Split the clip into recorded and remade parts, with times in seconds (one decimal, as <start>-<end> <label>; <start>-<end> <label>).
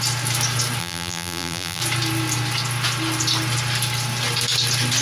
0.0-0.8 recorded; 0.8-1.8 remade; 1.8-5.0 recorded